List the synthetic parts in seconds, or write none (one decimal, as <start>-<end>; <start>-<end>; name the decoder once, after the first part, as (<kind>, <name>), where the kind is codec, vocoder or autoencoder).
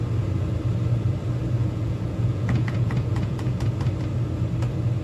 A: 1.6-3.7 (vocoder, Vocos)